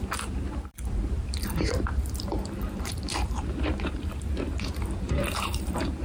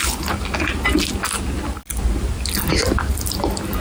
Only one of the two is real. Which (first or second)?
second